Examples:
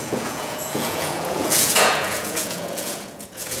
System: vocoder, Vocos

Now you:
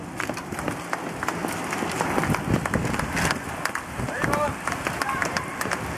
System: none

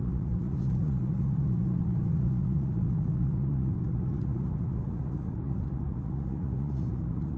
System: vocoder, Vocos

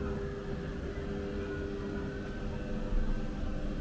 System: none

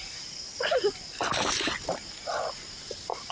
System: none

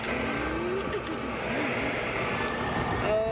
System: none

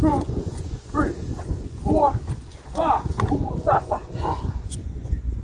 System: vocoder, Vocos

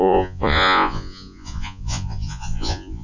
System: vocoder, Vocos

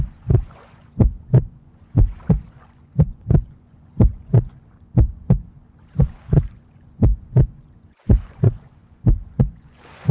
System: vocoder, Vocos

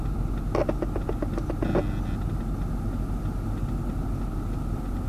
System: none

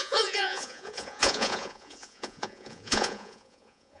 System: vocoder, Vocos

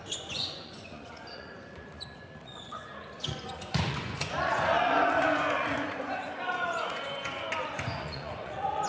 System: vocoder, Vocos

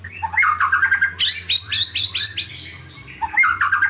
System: none